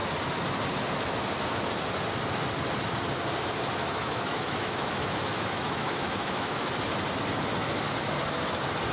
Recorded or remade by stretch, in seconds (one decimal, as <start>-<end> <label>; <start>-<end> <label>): 0.0-3.8 recorded; 3.8-6.7 remade; 6.7-8.9 recorded